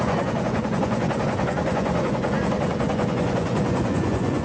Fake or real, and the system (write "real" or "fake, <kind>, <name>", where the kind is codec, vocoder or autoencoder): fake, vocoder, Vocos